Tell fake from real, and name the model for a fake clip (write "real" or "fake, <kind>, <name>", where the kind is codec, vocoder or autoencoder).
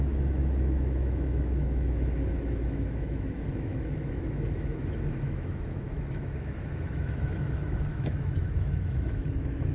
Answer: fake, autoencoder, DAC-VAE